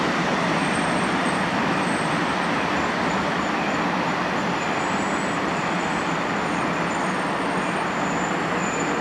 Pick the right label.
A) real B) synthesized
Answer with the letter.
B